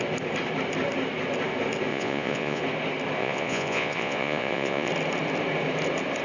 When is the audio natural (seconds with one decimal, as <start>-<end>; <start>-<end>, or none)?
0.0-1.9; 2.6-3.2; 4.9-6.2